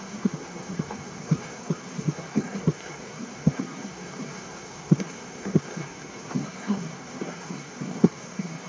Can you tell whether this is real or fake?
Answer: fake